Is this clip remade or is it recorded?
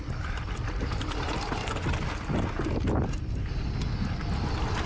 recorded